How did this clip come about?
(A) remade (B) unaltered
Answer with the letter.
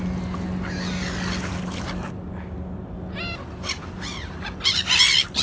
B